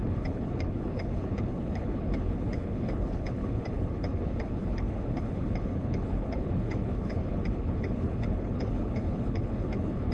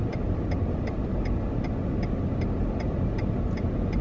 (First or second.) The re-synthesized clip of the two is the first